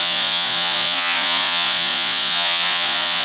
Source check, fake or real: fake